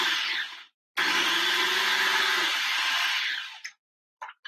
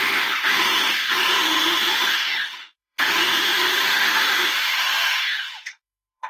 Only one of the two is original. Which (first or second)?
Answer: first